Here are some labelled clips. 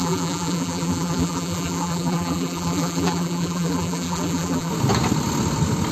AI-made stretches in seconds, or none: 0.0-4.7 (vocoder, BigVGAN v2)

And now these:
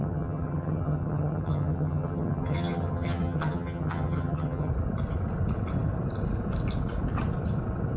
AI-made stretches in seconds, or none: 0.0-4.7 (vocoder, HiFi-GAN)

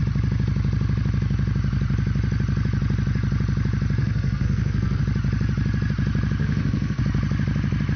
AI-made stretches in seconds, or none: 4.0-5.0 (codec, SNAC); 6.4-7.0

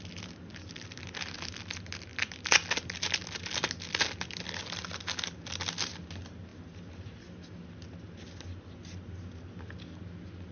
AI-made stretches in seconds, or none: none

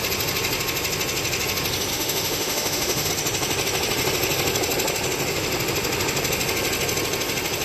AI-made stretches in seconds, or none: 1.9-3.1 (autoencoder, DAC-VAE)

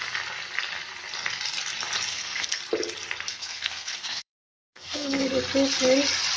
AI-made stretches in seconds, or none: 2.1-2.6 (codec, SNAC); 3.3-5.2

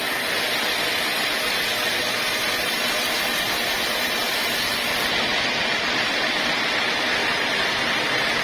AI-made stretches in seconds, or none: 7.2-8.4 (vocoder, BigVGAN v2)